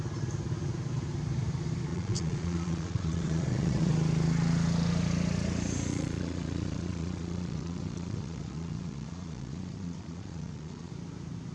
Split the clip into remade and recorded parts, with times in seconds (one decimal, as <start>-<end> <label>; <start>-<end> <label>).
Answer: 0.0-1.9 recorded; 1.9-3.9 remade; 3.9-5.9 recorded; 5.9-10.9 remade; 10.9-11.5 recorded